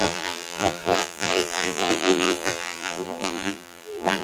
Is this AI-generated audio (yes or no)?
yes